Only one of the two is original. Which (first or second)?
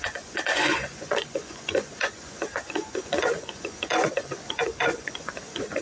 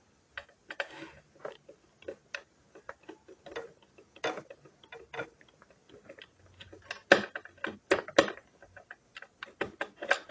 second